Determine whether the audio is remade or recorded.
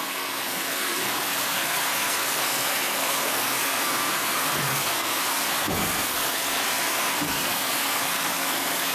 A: remade